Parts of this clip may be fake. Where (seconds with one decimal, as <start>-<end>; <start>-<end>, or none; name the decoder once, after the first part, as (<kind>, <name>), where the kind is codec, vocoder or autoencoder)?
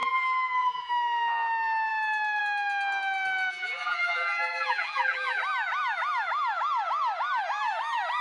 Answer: 0.0-0.9 (vocoder, BigVGAN v2); 3.5-5.4